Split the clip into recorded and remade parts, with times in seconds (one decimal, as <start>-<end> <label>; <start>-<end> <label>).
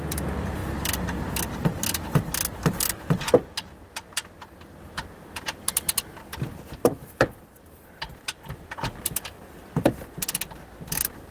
0.0-11.3 recorded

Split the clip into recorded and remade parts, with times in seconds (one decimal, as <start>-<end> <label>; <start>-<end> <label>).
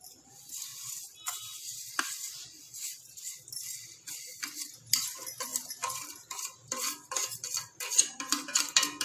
0.0-0.7 remade; 0.7-2.8 recorded; 2.8-9.0 remade